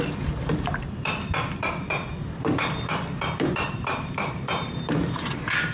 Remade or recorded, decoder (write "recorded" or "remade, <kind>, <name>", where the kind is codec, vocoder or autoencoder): remade, vocoder, BigVGAN v2